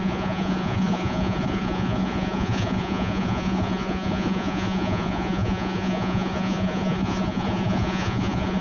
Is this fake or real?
fake